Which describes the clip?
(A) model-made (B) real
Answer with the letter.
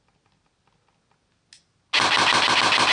B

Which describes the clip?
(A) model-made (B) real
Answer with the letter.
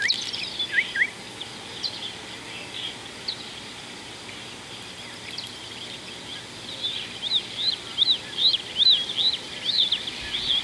B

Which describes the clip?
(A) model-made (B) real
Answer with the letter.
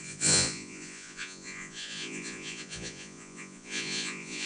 A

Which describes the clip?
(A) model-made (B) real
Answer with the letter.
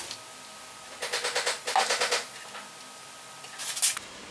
B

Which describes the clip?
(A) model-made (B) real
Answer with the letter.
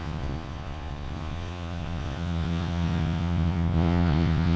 A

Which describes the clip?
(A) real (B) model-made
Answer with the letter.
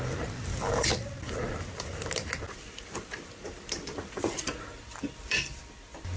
A